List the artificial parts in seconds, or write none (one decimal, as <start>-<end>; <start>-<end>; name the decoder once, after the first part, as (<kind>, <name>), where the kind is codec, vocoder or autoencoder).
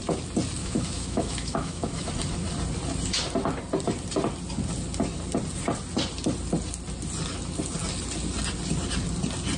0.6-2.1 (autoencoder, DAC-VAE)